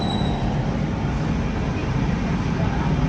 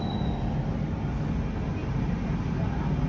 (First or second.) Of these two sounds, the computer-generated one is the first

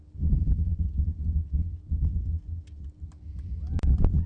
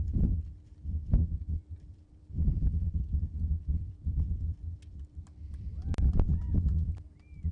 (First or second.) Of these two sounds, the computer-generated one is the second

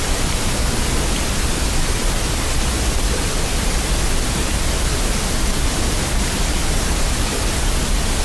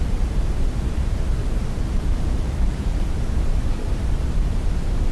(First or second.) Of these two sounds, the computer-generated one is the second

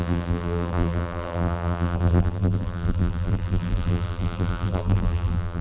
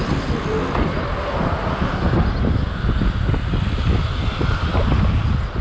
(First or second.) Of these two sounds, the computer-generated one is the first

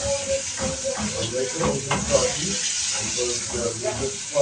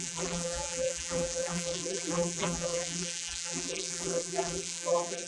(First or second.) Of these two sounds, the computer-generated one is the second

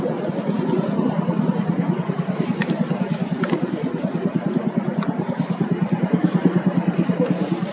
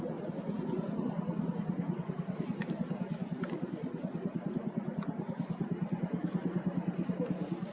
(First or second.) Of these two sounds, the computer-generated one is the first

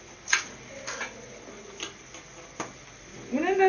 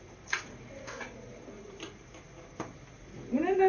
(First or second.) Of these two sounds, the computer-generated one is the second